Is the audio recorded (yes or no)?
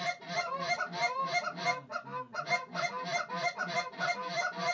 yes